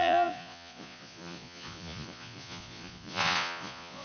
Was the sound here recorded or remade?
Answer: remade